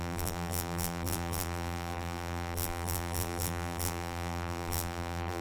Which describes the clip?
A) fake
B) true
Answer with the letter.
A